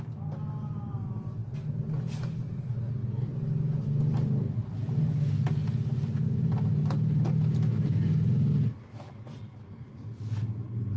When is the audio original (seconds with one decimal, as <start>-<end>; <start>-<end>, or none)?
0.0-11.0